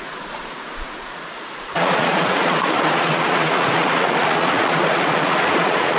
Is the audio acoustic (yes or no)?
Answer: no